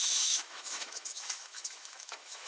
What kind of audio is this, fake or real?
fake